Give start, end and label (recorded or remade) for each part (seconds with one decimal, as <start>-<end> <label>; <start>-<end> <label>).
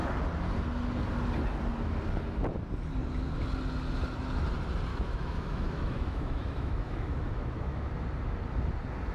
0.0-4.9 recorded; 4.9-7.9 remade; 7.9-9.1 recorded